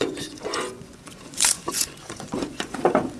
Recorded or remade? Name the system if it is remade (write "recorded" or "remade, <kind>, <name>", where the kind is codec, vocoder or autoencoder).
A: remade, vocoder, Vocos